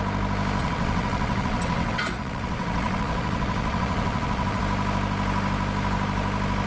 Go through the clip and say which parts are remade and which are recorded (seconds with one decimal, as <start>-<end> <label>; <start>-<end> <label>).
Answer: 0.0-0.6 recorded; 0.6-4.6 remade; 4.6-6.7 recorded

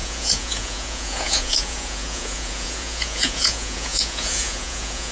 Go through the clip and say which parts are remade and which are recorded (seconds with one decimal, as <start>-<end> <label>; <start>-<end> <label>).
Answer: 0.0-5.1 remade

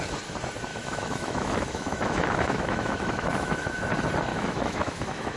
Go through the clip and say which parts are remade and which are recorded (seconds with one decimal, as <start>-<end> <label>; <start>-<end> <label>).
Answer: 0.0-0.7 recorded; 0.7-3.9 remade; 3.9-4.3 recorded; 4.3-5.4 remade

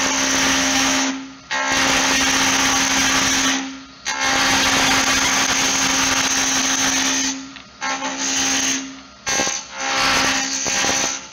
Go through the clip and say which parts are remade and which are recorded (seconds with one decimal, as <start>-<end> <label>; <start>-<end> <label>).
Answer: 0.0-0.5 recorded; 0.5-1.1 remade; 1.1-11.3 recorded

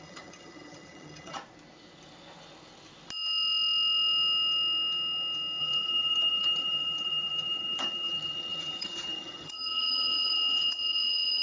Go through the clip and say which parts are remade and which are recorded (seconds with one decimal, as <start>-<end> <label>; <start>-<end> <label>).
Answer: 0.0-1.4 remade; 1.4-5.6 recorded; 5.6-11.4 remade

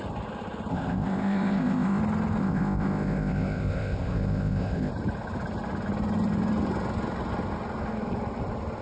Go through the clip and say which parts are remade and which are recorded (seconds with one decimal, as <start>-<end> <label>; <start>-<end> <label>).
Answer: 0.0-0.7 recorded; 0.7-2.0 remade; 2.0-2.4 recorded; 2.4-4.9 remade; 4.9-8.8 recorded